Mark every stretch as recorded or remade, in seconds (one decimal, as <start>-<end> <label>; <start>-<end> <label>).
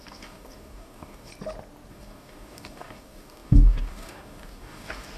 0.0-1.3 remade; 1.3-1.9 recorded; 1.9-5.2 remade